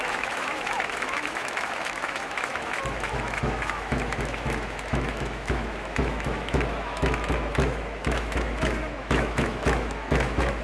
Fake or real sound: fake